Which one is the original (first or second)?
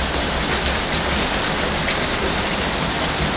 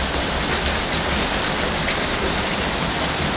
first